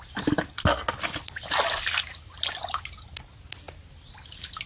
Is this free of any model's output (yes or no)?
yes